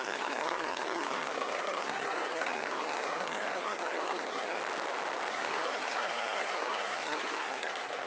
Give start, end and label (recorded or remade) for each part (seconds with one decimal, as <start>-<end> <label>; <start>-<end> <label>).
0.0-4.6 remade; 4.6-5.3 recorded; 5.3-8.1 remade